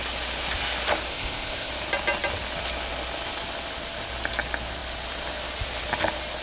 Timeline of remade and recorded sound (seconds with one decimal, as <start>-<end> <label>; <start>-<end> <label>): 0.0-1.1 recorded; 1.1-1.7 remade; 1.7-6.4 recorded